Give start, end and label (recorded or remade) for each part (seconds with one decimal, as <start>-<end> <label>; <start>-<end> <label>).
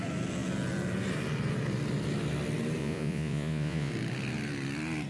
0.0-2.8 recorded; 2.8-3.9 remade; 3.9-5.1 recorded